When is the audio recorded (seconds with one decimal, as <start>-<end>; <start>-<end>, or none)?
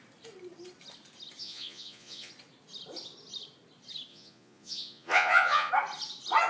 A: 0.0-1.4; 2.3-4.1; 5.7-6.5